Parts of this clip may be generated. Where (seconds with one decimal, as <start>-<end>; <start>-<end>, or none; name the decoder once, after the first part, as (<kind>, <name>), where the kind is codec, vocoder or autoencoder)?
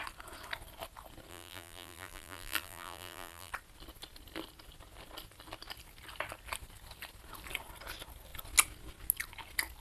1.3-3.5 (vocoder, BigVGAN v2)